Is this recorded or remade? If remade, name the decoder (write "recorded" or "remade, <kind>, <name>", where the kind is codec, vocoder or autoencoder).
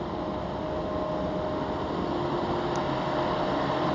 recorded